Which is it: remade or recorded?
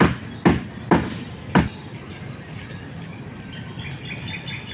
recorded